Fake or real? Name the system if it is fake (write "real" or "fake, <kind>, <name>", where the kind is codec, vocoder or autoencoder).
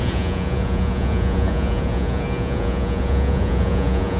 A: fake, vocoder, Vocos